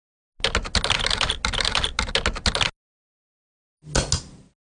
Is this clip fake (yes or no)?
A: no